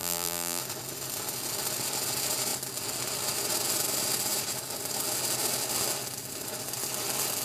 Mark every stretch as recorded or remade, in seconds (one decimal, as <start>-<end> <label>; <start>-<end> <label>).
0.0-0.6 remade; 0.6-7.4 recorded